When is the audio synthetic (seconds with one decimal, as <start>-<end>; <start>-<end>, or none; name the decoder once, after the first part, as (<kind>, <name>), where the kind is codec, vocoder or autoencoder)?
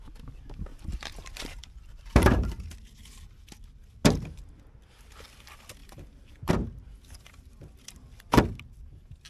0.7-2.8 (vocoder, BigVGAN v2); 5.8-6.5